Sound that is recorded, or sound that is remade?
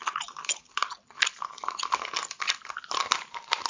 recorded